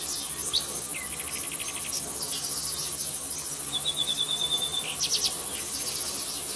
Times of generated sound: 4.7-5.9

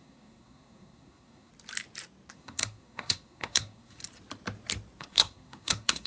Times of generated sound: 0.0-1.5; 2.3-4.0; 5.0-6.1

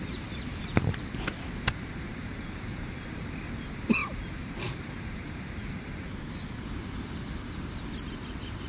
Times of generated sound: 2.1-3.2; 4.0-6.2

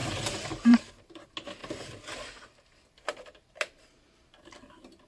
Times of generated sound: 0.0-0.9